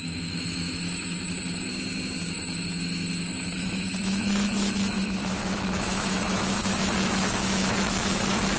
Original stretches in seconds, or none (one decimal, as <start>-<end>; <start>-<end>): 1.7-2.3